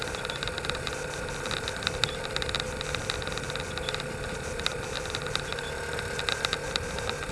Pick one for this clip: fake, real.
real